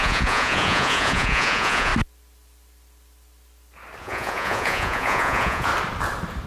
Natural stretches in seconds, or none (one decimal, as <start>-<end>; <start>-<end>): 1.9-4.0; 5.7-6.5